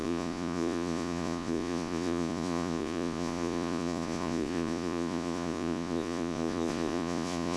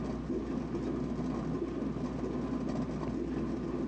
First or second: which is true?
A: second